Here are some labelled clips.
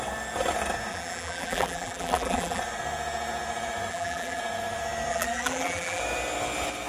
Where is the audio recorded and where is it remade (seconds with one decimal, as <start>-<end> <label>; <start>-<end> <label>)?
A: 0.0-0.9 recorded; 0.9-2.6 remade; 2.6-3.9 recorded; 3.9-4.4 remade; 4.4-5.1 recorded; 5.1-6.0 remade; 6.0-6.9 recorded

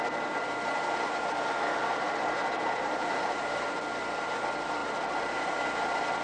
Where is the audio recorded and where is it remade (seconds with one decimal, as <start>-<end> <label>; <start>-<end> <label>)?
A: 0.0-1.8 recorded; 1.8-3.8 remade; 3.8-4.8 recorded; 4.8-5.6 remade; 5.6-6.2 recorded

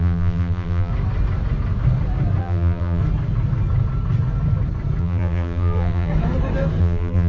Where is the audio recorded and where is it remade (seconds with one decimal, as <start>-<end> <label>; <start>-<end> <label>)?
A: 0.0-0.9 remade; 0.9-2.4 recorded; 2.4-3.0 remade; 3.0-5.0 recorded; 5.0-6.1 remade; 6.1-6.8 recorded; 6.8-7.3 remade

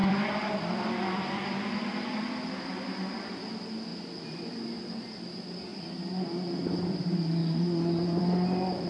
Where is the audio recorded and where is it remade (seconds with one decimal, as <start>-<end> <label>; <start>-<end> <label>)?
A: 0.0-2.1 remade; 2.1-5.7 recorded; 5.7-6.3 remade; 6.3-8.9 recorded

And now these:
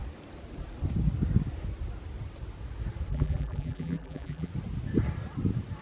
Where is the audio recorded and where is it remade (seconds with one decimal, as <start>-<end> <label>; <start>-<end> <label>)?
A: 0.0-3.1 recorded; 3.1-4.5 remade; 4.5-5.8 recorded